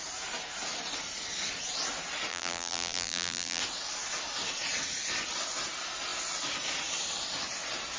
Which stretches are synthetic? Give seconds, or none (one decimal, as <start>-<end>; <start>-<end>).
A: 2.3-3.6